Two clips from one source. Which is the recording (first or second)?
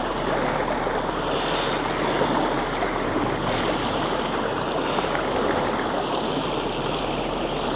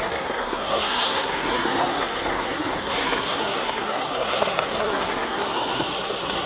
first